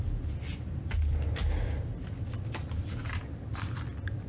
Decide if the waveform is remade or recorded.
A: recorded